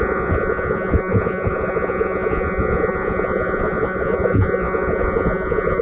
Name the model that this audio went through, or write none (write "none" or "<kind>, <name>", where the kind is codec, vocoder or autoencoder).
vocoder, Vocos